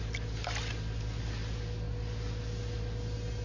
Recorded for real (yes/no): yes